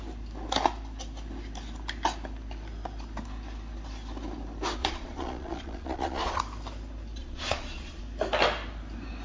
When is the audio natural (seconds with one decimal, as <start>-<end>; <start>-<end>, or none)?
0.0-4.8; 6.4-7.2; 8.0-9.2